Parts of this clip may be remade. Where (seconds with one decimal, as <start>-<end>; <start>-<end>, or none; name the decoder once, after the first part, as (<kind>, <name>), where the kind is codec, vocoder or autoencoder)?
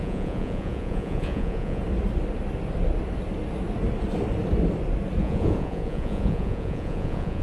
0.0-1.8 (vocoder, Vocos); 5.2-7.4